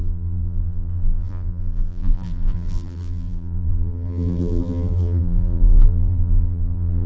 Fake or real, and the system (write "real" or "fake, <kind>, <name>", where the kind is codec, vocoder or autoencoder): fake, vocoder, BigVGAN v2